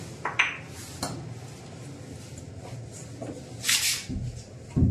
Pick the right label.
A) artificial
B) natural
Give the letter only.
B